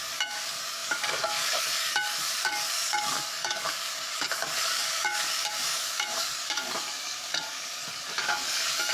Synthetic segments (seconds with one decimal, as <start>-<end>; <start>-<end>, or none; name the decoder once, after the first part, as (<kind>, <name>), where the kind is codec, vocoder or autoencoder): 0.0-8.9 (codec, DAC)